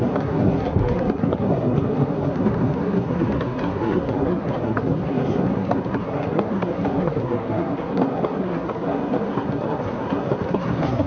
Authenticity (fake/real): fake